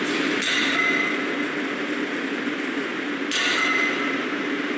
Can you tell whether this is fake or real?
real